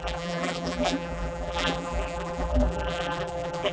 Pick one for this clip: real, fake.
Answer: fake